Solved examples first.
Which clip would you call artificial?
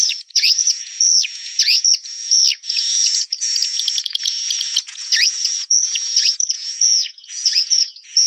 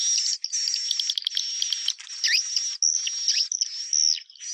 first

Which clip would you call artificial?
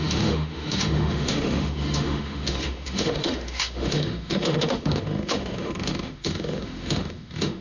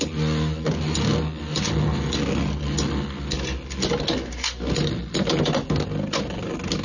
first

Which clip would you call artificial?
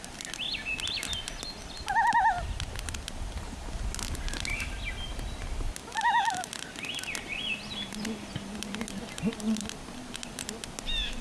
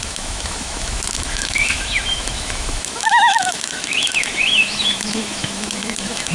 second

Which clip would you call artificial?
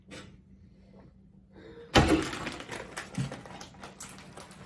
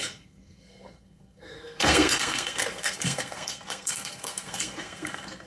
second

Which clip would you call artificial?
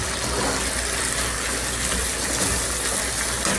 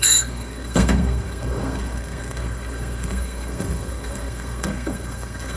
second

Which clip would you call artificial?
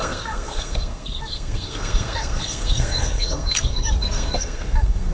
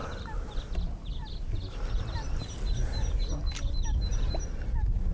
first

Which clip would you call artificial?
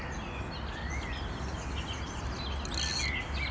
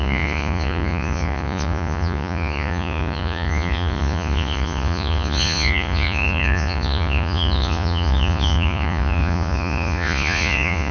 second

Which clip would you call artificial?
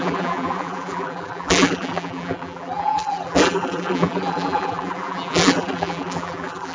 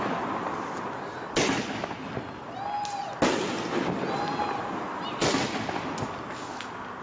first